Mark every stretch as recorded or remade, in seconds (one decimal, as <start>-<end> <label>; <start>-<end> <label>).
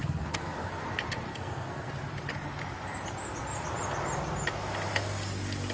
0.0-0.7 remade; 0.7-1.3 recorded; 1.3-1.9 remade; 1.9-5.7 recorded